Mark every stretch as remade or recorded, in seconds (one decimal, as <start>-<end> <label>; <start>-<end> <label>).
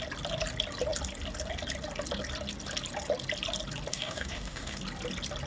0.0-3.9 recorded; 3.9-4.8 remade; 4.8-5.5 recorded